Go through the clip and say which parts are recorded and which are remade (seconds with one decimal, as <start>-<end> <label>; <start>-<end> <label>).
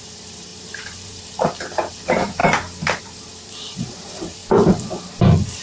0.0-2.4 remade; 2.4-3.0 recorded; 3.0-4.4 remade; 4.4-5.6 recorded